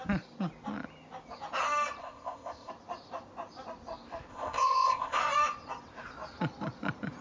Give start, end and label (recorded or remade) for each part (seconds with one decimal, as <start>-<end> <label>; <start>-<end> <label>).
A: 0.0-2.0 recorded; 2.0-2.7 remade; 2.7-4.3 recorded; 4.3-5.2 remade; 5.2-7.2 recorded